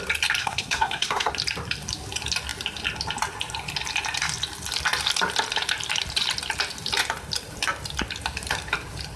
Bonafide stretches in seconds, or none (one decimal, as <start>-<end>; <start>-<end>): 0.0-0.4; 1.3-9.2